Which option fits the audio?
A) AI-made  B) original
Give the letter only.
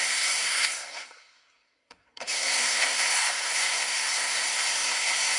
A